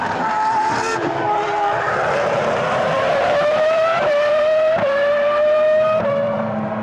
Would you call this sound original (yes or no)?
no